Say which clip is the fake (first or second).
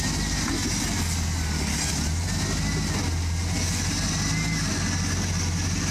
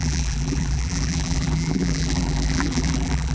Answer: second